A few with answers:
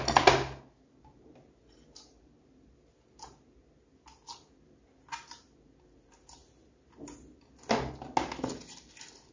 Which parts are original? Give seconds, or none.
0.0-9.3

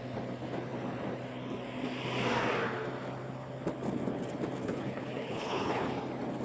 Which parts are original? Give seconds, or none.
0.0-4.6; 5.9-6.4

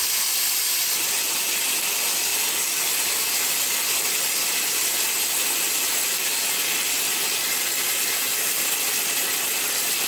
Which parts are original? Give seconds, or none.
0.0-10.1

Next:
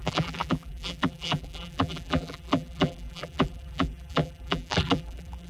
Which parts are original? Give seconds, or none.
none

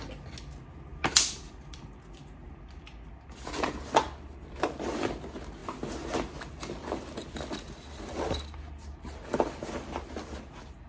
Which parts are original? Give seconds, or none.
0.0-10.9